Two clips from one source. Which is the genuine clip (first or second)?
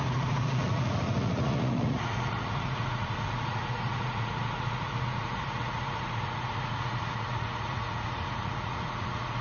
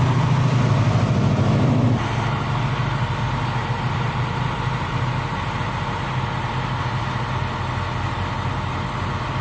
second